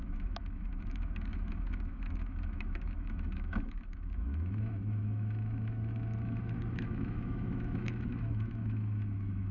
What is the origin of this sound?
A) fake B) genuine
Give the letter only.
A